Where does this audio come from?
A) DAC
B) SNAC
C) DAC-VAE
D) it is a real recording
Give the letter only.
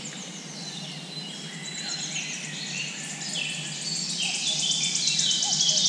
D